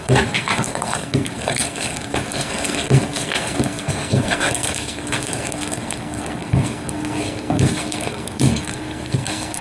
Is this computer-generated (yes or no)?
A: yes